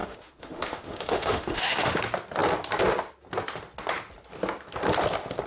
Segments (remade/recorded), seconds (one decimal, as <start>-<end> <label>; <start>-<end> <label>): 0.0-2.0 remade; 2.0-5.5 recorded